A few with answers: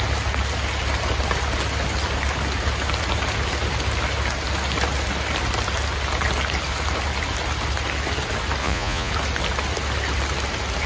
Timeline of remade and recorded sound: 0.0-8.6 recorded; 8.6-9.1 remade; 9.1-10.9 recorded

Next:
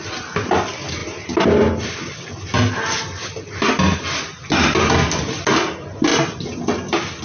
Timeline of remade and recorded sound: 0.0-7.2 recorded

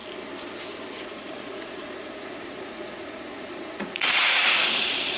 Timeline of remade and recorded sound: 0.0-0.9 recorded; 0.9-5.2 remade